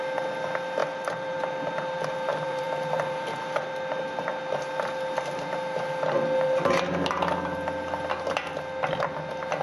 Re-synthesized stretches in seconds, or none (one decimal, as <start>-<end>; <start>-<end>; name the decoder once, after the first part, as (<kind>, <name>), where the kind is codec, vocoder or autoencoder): 0.8-1.4 (vocoder, BigVGAN v2); 2.3-3.7